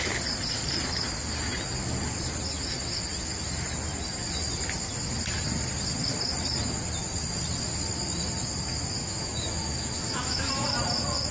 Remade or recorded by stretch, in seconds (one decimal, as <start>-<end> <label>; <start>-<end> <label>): 0.0-9.0 recorded; 9.0-10.5 remade; 10.5-11.3 recorded

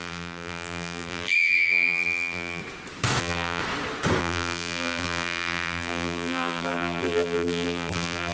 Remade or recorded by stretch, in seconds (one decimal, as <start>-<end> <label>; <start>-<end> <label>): 0.0-2.6 remade; 2.6-3.2 recorded; 3.2-3.6 remade; 3.6-4.2 recorded; 4.2-8.3 remade

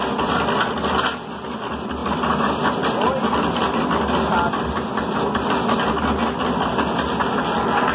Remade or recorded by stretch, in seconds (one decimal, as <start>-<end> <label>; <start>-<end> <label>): 0.0-7.9 recorded

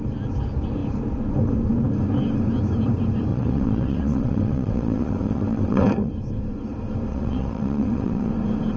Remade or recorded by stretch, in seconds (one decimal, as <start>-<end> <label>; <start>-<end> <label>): 0.0-3.3 recorded; 3.3-6.1 remade; 6.1-7.1 recorded; 7.1-8.3 remade; 8.3-8.8 recorded

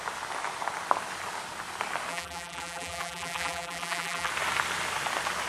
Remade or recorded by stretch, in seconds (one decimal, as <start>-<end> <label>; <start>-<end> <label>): 0.0-2.1 recorded; 2.1-4.3 remade; 4.3-5.5 recorded

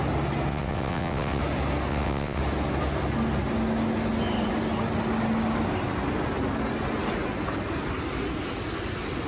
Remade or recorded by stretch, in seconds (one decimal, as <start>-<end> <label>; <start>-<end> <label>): 0.0-0.5 recorded; 0.5-1.4 remade; 1.4-1.9 recorded; 1.9-2.4 remade; 2.4-9.3 recorded